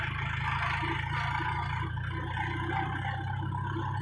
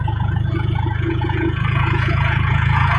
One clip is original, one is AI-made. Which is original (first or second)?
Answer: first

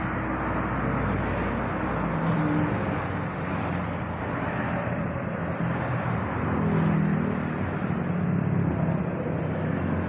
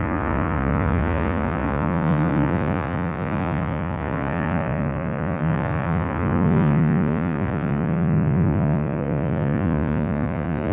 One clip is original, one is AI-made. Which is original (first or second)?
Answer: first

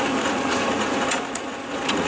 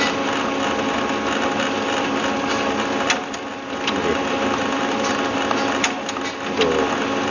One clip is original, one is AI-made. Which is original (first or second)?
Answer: second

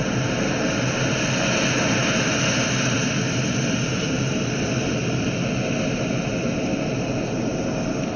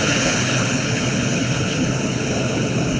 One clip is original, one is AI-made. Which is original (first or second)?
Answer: first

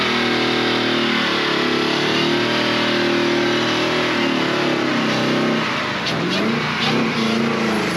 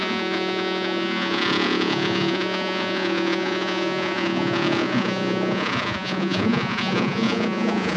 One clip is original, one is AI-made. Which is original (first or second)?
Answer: first